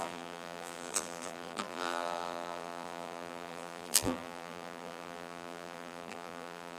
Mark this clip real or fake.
fake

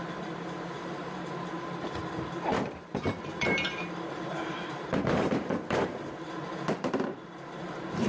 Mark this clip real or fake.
fake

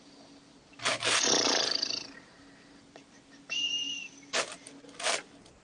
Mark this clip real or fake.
fake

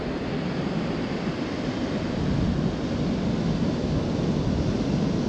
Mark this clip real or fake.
real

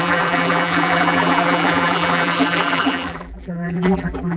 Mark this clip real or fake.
fake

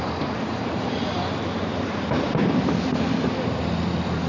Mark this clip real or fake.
fake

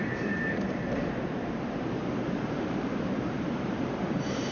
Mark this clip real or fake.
fake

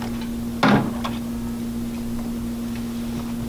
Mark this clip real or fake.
real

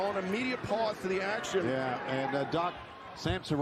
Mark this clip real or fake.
real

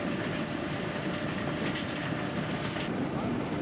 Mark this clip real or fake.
fake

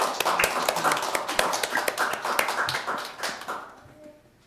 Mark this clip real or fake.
real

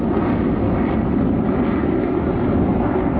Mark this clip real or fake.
real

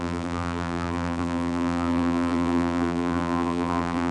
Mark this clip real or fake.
fake